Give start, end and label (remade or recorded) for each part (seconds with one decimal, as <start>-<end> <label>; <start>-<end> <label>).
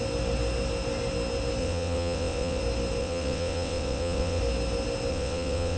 0.0-1.6 recorded; 1.6-2.6 remade; 2.6-3.0 recorded; 3.0-4.4 remade; 4.4-5.1 recorded; 5.1-5.8 remade